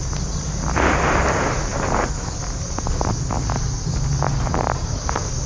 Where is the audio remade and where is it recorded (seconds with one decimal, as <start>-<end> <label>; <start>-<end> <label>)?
0.0-5.5 recorded